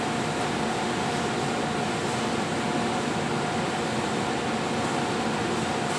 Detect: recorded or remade recorded